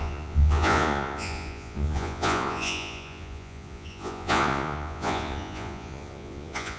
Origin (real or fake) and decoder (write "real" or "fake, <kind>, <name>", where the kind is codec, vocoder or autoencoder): fake, vocoder, Vocos